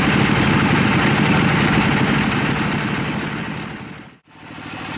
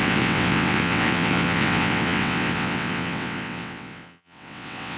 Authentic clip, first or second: first